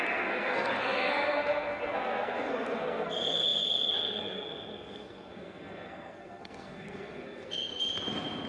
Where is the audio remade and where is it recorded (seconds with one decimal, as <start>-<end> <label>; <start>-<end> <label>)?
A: 0.0-7.7 remade; 7.7-8.5 recorded